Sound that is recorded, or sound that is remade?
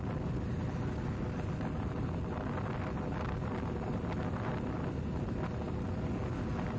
recorded